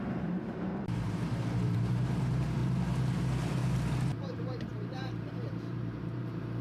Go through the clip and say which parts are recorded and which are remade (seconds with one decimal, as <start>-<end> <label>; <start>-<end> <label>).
0.0-2.6 remade; 2.6-3.2 recorded; 3.2-3.6 remade; 3.6-4.1 recorded; 4.1-6.6 remade